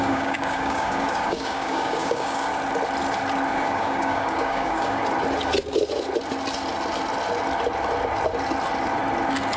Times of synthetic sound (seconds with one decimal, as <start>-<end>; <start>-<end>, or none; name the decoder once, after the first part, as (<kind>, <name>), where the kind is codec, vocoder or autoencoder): 0.0-2.5 (codec, DAC); 3.5-5.0